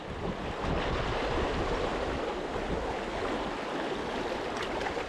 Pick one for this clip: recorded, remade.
recorded